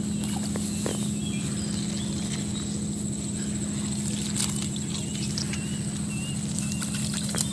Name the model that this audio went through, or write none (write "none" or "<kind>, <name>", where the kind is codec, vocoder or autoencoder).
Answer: none